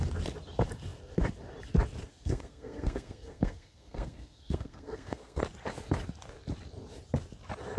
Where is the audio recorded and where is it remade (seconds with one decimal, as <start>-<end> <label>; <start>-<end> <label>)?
0.0-2.1 recorded; 2.1-5.4 remade; 5.4-7.8 recorded